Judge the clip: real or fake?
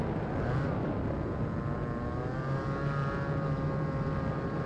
real